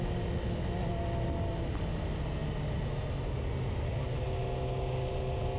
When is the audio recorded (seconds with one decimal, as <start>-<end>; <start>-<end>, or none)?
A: 0.0-5.6